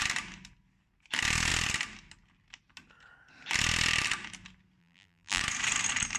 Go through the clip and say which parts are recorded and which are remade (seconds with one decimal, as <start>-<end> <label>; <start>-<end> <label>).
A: 0.0-4.8 recorded; 4.8-5.4 remade; 5.4-6.2 recorded